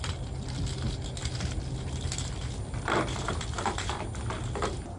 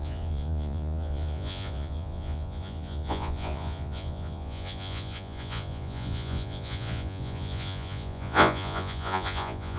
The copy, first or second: second